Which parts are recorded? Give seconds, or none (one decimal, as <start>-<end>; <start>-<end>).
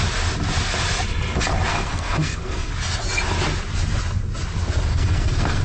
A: 0.0-1.7; 2.7-4.9